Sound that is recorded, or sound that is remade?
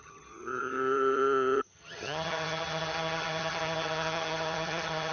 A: remade